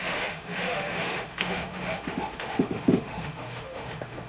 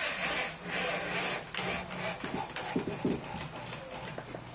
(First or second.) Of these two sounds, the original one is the second